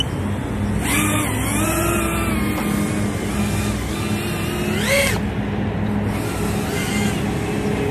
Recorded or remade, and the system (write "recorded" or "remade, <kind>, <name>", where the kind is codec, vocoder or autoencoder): recorded